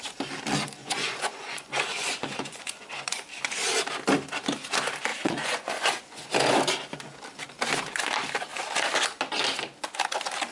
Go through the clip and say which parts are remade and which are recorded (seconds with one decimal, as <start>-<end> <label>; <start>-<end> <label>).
0.0-0.8 recorded; 0.8-3.2 remade; 3.2-5.1 recorded; 5.1-6.3 remade; 6.3-10.5 recorded